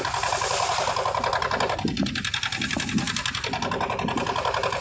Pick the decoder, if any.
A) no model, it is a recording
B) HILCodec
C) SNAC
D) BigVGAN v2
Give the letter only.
A